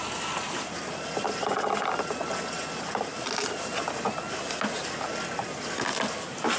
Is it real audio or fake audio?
real